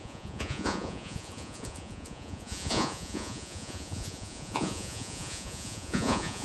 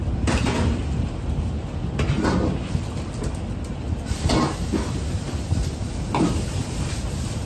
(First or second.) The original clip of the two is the second